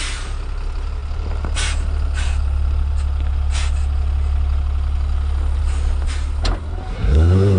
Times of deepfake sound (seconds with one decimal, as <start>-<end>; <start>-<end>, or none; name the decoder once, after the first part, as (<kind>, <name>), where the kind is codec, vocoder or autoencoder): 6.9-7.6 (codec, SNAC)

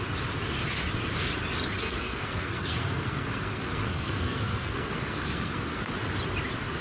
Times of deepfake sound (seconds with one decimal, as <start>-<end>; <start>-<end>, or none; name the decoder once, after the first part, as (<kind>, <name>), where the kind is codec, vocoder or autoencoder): 1.8-5.9 (codec, SNAC)

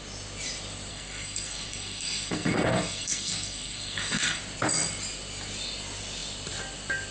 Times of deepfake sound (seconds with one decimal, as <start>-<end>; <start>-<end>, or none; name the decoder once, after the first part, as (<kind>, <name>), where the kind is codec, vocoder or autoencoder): 0.9-4.4 (codec, SNAC)

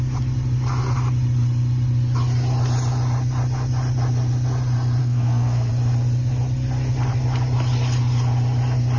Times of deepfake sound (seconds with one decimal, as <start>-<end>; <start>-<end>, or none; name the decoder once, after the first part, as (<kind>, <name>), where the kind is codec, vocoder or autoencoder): 5.0-5.7 (codec, SNAC)